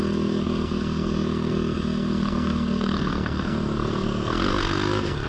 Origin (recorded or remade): remade